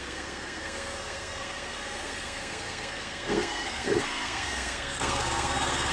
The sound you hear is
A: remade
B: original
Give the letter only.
A